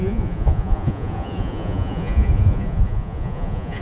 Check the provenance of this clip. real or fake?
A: fake